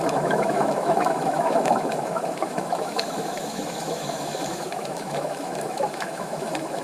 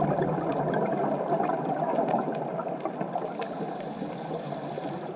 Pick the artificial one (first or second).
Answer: first